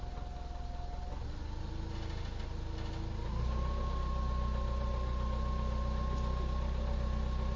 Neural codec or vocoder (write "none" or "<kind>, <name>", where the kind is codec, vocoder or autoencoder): none